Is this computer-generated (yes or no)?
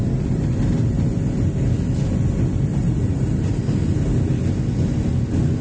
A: no